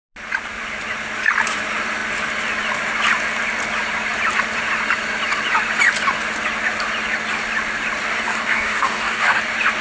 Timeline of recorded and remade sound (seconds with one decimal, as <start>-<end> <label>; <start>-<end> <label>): 0.0-8.3 recorded; 8.3-9.4 remade; 9.4-9.8 recorded